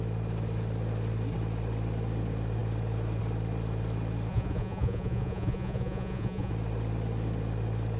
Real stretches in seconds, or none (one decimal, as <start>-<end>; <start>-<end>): 0.0-4.3; 6.5-8.0